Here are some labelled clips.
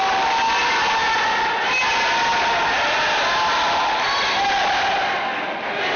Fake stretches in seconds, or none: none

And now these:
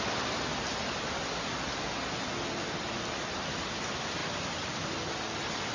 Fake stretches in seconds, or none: 4.2-4.9 (vocoder, BigVGAN v2)